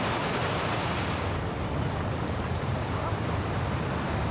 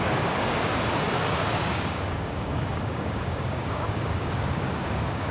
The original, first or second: first